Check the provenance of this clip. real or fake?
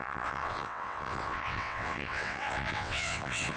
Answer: fake